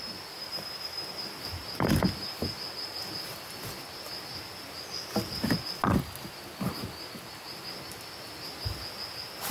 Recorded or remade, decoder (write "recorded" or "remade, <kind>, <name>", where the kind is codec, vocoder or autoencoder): recorded